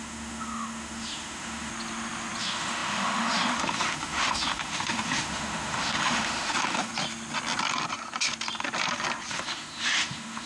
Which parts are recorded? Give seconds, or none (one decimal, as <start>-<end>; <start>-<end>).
1.7-2.4; 6.9-9.3